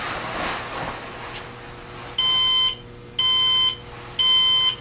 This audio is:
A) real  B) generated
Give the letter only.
A